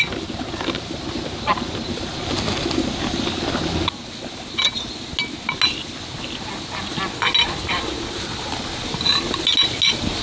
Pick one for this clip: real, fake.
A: real